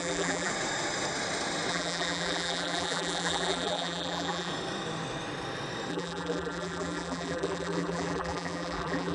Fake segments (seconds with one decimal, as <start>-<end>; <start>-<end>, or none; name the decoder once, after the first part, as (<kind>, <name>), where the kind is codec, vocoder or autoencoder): 0.0-0.5 (vocoder, BigVGAN v2); 1.7-4.5; 5.9-9.1